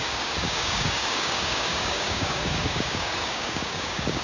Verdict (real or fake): fake